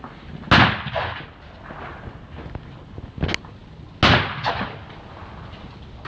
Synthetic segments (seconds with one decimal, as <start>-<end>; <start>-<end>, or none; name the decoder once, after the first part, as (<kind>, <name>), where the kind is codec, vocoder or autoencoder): none